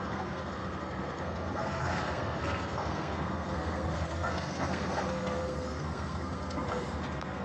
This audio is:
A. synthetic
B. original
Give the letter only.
A